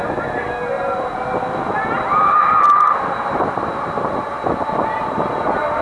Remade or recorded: recorded